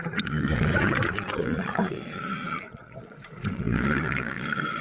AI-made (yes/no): yes